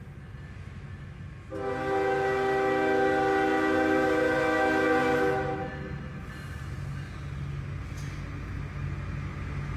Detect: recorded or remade recorded